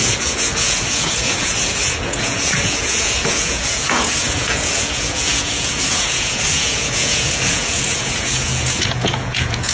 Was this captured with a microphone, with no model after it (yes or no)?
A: no